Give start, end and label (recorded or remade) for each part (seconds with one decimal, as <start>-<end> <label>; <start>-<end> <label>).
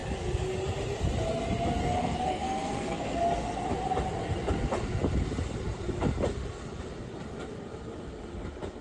0.0-1.8 recorded; 1.8-3.2 remade; 3.2-8.8 recorded